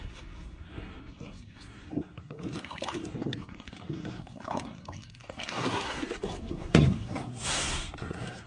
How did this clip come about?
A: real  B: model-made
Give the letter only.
B